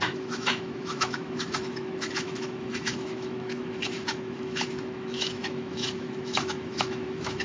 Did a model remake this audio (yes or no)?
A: yes